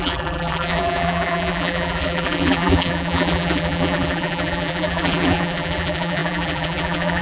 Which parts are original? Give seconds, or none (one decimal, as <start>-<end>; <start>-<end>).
none